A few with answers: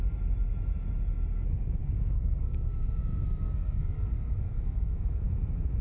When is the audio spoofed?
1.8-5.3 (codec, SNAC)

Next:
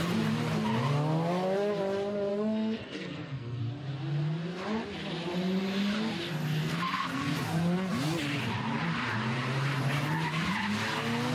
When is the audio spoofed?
2.3-3.6 (codec, SNAC); 6.6-7.3

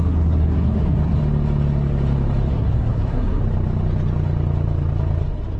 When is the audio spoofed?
0.0-1.2 (codec, SNAC); 2.5-3.4